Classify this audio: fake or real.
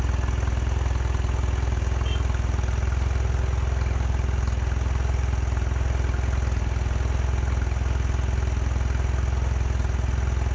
real